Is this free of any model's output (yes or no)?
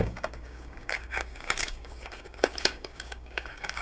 no